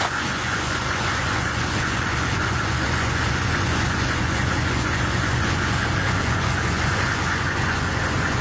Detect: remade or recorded remade